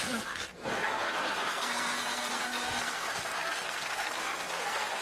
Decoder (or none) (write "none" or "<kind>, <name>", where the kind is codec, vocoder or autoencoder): codec, SNAC